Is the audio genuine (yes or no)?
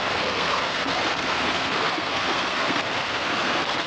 no